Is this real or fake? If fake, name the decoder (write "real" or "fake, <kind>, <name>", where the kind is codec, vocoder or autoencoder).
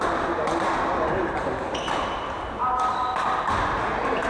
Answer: real